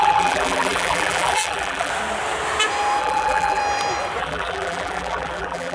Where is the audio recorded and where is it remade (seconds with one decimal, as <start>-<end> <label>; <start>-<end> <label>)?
0.0-1.9 remade; 1.9-3.0 recorded; 3.0-3.6 remade; 3.6-4.2 recorded; 4.2-5.7 remade